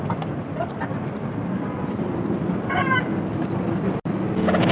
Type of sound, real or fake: real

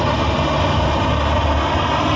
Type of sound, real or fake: real